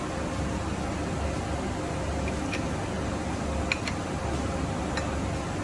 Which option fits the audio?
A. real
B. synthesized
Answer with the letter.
A